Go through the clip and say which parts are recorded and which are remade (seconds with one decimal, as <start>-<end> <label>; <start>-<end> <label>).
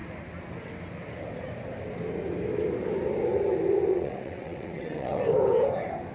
0.0-3.9 recorded; 3.9-5.2 remade; 5.2-6.1 recorded